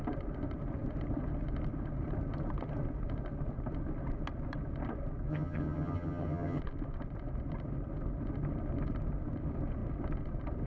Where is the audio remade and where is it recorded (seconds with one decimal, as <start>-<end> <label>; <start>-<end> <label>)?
0.0-5.3 recorded; 5.3-6.6 remade; 6.6-10.7 recorded